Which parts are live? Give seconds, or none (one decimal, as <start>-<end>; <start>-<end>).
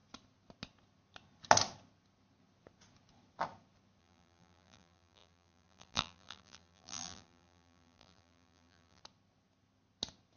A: 0.0-4.0; 9.0-10.4